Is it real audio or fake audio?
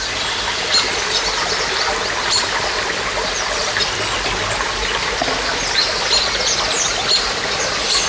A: real